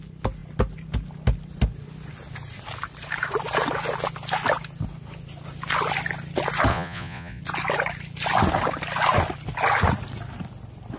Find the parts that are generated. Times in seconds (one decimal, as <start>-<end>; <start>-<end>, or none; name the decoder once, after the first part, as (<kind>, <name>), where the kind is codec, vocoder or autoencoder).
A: 6.7-7.4 (vocoder, Vocos)